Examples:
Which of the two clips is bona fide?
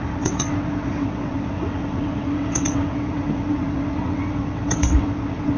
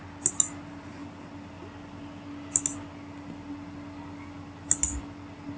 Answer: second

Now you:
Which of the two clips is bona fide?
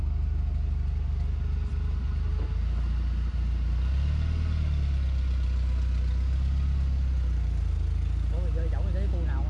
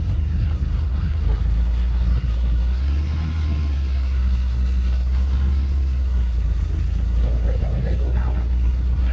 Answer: first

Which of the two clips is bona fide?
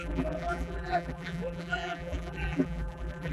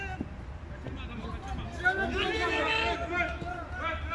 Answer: second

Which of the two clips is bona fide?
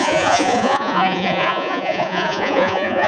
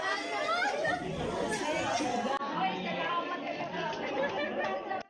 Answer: second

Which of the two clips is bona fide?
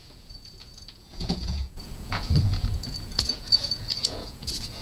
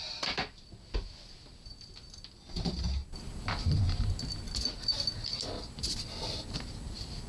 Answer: second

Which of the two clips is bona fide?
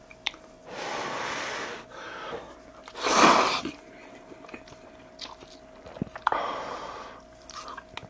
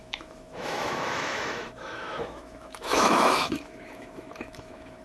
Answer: first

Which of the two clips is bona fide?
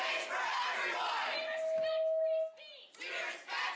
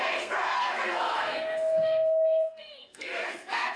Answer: first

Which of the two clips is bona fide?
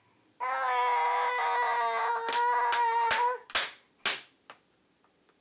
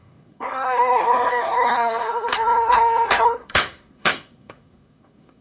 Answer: first